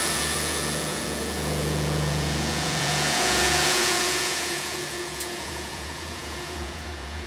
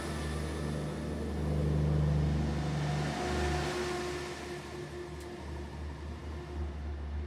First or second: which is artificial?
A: first